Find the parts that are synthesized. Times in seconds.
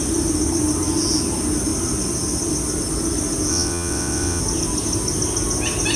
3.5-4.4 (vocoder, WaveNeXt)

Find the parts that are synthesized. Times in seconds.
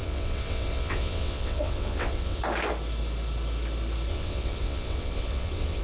0.0-2.4 (vocoder, WaveNeXt); 4.1-5.8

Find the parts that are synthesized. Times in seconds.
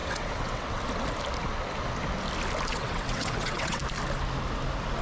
0.0-0.8 (vocoder, WaveNeXt); 2.7-3.8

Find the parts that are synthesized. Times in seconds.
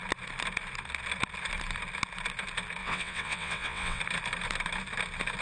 2.8-4.0 (vocoder, WaveNeXt)